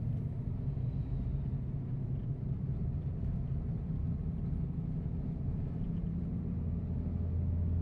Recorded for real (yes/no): yes